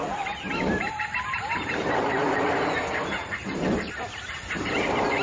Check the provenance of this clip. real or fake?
fake